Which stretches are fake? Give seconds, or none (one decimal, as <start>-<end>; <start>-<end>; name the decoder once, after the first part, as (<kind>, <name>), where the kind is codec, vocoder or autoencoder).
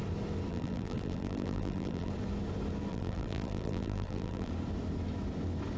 0.5-2.1 (vocoder, BigVGAN v2); 2.9-4.5